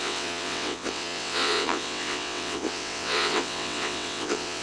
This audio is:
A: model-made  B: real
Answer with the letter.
A